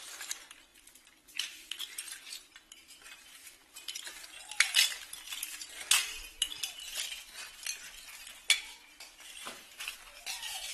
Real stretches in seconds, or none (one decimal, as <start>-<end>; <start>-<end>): 0.0-0.7; 5.2-6.2; 6.9-8.8; 10.0-10.7